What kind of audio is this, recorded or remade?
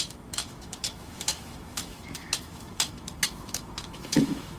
remade